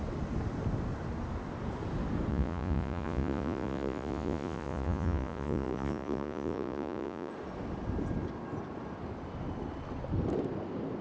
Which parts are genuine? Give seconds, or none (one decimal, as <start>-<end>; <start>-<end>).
0.0-2.3; 7.3-11.0